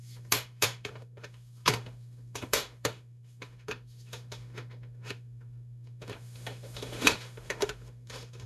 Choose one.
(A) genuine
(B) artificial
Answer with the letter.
B